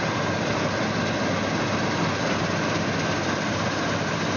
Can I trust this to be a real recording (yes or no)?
yes